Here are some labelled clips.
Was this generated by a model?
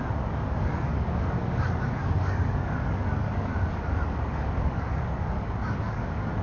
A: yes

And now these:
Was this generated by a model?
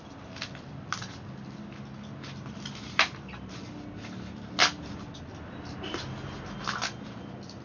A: no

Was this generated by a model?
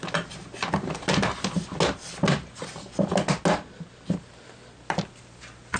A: no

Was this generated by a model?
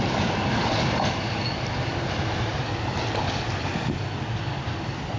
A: no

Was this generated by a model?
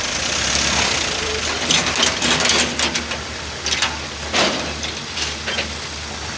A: no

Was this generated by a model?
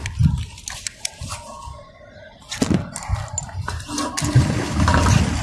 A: no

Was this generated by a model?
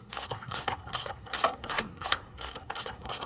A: yes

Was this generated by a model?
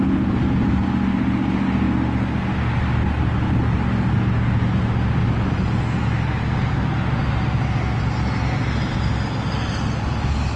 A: no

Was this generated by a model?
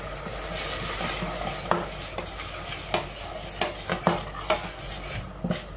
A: no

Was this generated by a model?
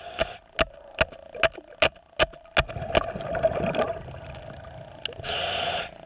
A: no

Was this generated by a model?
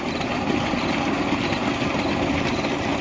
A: no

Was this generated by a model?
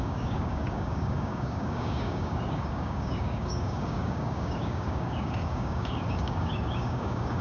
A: yes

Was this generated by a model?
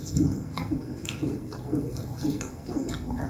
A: yes